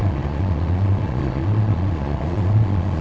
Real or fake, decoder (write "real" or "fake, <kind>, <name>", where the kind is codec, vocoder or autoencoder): fake, vocoder, Vocos